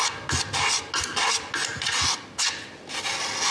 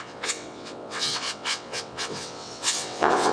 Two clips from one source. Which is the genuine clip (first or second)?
first